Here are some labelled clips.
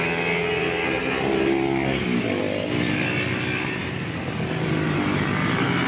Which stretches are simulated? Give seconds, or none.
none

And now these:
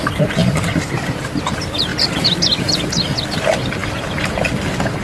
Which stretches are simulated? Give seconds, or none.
none

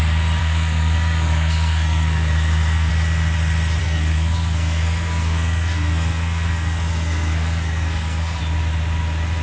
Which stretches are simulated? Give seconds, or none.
0.4-2.9 (codec, SNAC); 3.8-8.4

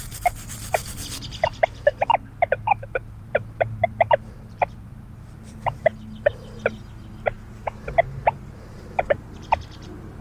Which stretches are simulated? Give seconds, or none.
0.0-1.9 (vocoder, BigVGAN v2); 2.7-5.9; 7.9-10.2

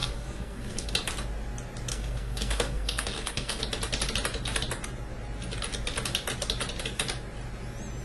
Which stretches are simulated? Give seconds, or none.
0.0-0.9 (codec, SNAC); 1.9-3.6